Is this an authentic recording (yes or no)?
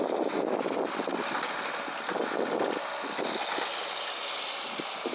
yes